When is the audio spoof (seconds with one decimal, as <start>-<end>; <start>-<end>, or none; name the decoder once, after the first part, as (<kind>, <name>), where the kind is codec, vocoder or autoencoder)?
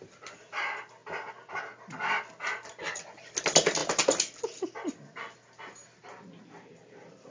none